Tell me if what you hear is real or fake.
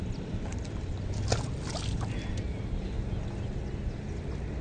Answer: real